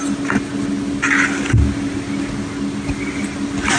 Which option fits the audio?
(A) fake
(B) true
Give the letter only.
B